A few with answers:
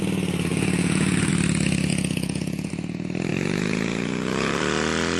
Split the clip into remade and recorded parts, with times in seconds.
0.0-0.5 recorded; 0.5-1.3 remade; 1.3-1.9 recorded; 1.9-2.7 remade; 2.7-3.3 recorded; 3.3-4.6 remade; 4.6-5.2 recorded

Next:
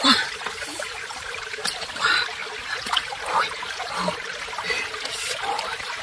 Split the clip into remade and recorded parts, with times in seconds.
0.0-2.4 remade; 2.4-5.1 recorded; 5.1-6.0 remade